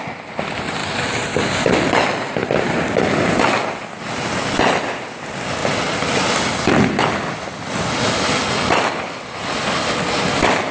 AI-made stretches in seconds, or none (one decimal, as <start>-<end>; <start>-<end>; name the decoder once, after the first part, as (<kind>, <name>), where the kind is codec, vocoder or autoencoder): none